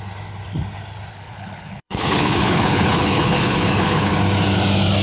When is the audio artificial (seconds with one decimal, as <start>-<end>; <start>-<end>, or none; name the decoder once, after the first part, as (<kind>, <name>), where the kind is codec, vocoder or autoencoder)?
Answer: 1.1-4.1 (codec, HILCodec)